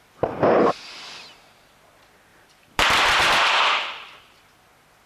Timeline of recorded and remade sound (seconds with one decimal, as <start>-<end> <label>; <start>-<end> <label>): 0.0-2.3 recorded; 2.3-4.4 remade; 4.4-5.1 recorded